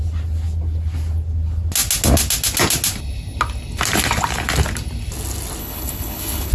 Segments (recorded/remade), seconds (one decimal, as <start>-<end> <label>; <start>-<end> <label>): 0.0-5.6 recorded; 5.6-6.5 remade